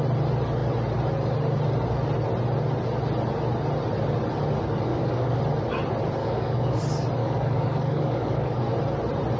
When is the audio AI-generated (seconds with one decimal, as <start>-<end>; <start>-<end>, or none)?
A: 4.9-5.4; 6.2-6.8; 7.2-8.6